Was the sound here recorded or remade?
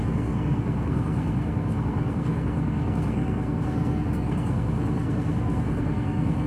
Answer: remade